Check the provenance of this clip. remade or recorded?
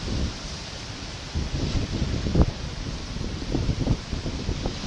remade